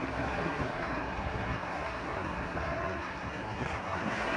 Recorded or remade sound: remade